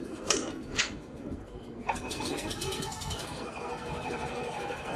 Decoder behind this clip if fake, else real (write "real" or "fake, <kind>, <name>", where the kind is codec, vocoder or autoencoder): fake, codec, SNAC